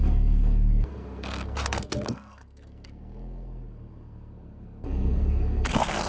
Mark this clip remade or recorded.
remade